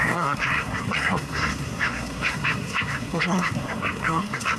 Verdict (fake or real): fake